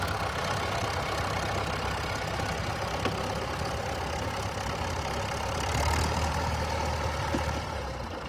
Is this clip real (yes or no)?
yes